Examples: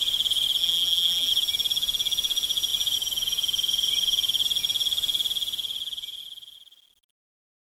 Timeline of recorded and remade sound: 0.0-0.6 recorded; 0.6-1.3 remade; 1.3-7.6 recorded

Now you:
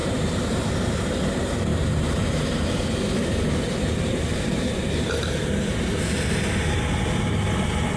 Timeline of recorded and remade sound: 0.0-0.6 remade; 0.6-1.7 recorded; 1.7-6.5 remade; 6.5-8.0 recorded

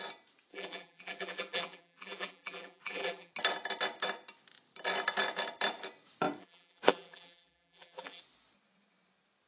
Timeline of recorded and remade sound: 0.0-0.5 recorded; 0.5-3.3 remade; 3.3-6.4 recorded; 6.4-8.2 remade; 8.2-9.5 recorded

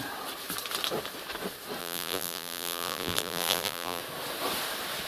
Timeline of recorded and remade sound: 0.0-1.8 recorded; 1.8-4.0 remade; 4.0-5.1 recorded

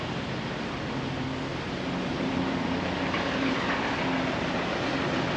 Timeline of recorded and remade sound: 0.0-1.5 recorded; 1.5-3.5 remade; 3.5-5.4 recorded